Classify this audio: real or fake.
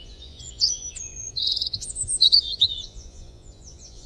fake